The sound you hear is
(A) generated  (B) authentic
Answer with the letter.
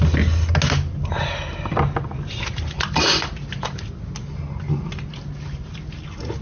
B